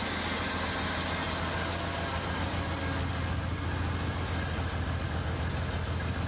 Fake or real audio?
real